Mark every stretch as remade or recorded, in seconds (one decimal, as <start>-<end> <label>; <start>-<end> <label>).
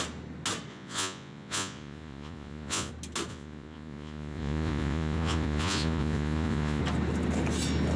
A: 0.0-0.7 recorded; 0.7-2.9 remade; 2.9-3.3 recorded; 3.3-6.8 remade; 6.8-8.0 recorded